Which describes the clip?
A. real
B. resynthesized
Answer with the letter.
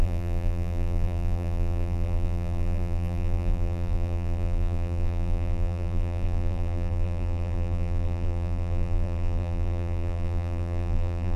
B